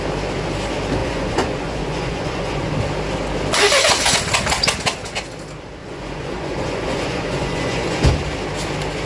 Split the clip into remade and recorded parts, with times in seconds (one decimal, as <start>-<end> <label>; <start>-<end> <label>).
0.0-1.0 recorded; 1.0-2.7 remade; 2.7-5.8 recorded; 5.8-8.1 remade; 8.1-9.1 recorded